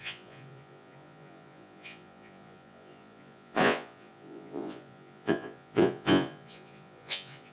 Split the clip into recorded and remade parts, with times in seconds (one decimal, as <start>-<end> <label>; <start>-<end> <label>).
0.0-7.5 remade